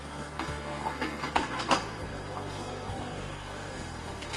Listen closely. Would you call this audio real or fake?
fake